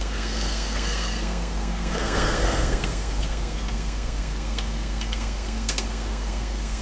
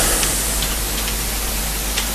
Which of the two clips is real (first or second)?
second